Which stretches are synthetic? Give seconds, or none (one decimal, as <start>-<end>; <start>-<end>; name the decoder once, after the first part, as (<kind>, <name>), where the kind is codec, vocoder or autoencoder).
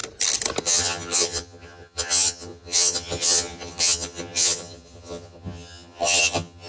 0.6-6.7 (vocoder, HiFi-GAN)